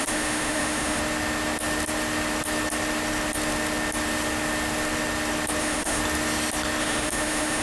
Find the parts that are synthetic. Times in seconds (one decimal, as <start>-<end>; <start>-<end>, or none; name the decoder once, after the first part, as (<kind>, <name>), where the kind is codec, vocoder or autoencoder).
0.0-1.0 (autoencoder, DAC-VAE); 5.6-6.0; 6.8-7.6